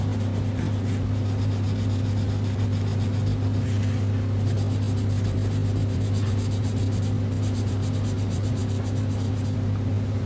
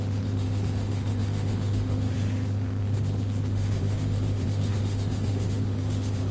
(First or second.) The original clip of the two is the first